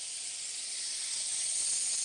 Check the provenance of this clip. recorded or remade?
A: recorded